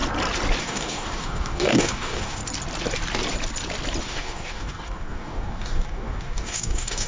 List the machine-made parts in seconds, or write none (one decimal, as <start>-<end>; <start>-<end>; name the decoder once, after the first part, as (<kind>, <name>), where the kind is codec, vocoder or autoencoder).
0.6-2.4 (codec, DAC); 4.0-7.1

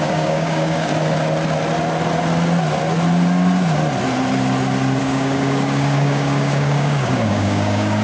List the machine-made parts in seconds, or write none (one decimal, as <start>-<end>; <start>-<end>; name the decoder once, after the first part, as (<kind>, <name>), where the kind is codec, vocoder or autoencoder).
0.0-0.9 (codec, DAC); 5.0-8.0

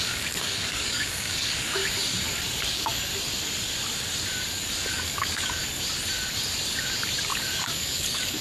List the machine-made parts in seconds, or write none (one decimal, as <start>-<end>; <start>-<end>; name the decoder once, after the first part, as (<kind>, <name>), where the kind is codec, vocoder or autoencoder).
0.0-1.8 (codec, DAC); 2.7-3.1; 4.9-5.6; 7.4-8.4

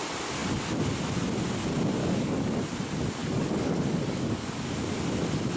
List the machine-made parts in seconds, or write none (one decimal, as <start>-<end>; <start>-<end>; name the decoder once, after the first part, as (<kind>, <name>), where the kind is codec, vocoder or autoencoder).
2.0-2.6 (codec, DAC); 3.2-4.7

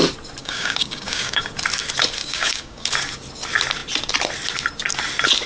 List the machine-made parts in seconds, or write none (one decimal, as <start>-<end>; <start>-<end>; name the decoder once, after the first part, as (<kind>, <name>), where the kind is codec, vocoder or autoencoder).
0.4-1.5 (codec, DAC); 2.2-2.9

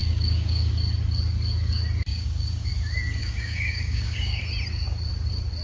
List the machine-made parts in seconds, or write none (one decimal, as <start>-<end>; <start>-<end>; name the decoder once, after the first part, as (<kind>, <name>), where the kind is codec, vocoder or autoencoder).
0.0-0.7 (codec, DAC); 2.1-2.7; 3.2-4.4

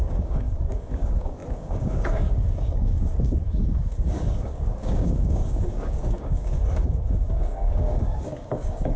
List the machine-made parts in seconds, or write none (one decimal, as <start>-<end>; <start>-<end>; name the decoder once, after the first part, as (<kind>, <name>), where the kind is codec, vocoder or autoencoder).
0.0-9.0 (codec, DAC)